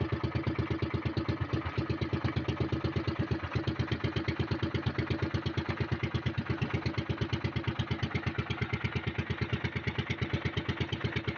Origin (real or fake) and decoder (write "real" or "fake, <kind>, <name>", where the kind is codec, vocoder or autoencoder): real